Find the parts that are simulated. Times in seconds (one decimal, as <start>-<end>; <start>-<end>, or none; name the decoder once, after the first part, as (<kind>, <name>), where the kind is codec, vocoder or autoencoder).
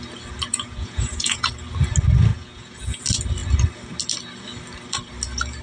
0.5-1.5 (vocoder, Vocos); 2.3-3.0